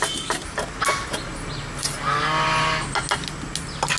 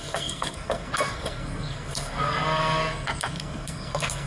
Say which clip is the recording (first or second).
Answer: first